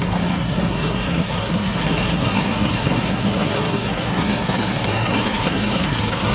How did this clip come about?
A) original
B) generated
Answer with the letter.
B